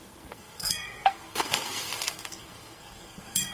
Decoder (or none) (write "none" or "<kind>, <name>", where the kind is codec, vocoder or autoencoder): codec, SNAC